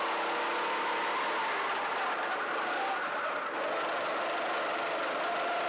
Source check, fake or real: real